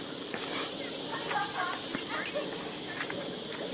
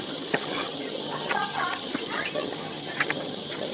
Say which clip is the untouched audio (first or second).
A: first